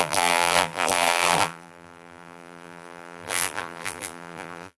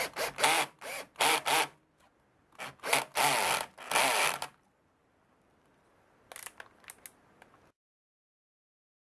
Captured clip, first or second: second